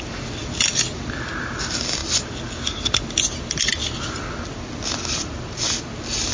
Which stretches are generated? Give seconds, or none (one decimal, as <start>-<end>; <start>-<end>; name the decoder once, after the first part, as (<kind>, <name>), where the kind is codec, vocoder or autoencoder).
none